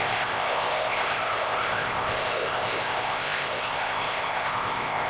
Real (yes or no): no